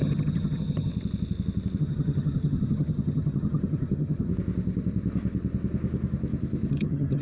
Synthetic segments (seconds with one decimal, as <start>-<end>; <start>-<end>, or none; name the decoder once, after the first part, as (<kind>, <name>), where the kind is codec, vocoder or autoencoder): 0.0-0.9 (vocoder, HiFi-GAN); 1.8-4.3; 6.7-7.2